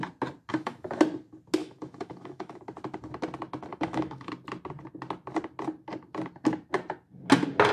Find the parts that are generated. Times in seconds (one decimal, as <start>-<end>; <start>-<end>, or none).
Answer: 0.5-1.0; 1.6-2.6; 3.7-4.3